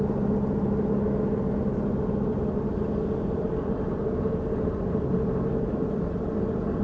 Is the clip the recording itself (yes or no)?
yes